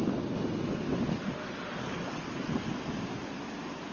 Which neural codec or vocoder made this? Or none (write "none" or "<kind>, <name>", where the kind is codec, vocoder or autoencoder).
none